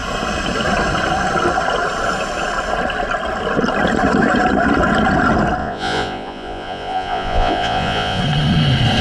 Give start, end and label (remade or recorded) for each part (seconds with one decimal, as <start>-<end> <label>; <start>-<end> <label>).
0.0-5.6 recorded; 5.6-8.2 remade; 8.2-9.0 recorded

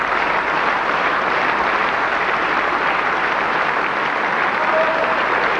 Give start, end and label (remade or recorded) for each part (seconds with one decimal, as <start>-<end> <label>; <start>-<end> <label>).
0.0-5.6 recorded

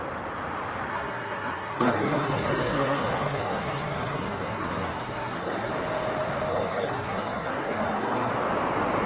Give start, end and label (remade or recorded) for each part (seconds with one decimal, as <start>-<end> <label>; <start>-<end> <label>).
0.0-0.9 recorded; 0.9-5.7 remade; 5.7-6.5 recorded; 6.5-8.3 remade; 8.3-9.1 recorded